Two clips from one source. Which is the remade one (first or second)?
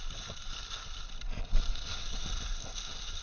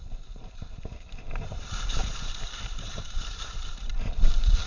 second